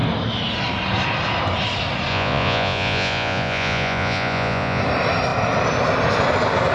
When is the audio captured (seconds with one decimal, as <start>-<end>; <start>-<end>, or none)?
0.0-2.1; 4.8-6.7